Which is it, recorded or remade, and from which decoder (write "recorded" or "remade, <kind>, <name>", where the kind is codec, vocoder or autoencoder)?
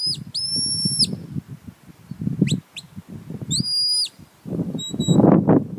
recorded